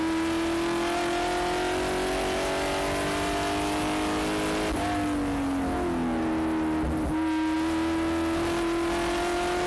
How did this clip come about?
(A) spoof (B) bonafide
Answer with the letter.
B